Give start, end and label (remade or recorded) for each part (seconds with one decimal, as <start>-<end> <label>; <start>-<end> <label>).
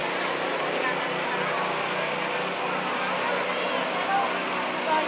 0.0-5.1 recorded